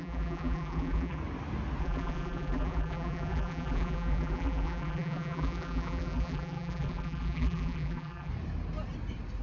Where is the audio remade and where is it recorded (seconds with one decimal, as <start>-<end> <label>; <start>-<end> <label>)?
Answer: 0.0-1.2 remade; 1.2-1.8 recorded; 1.8-8.3 remade; 8.3-9.4 recorded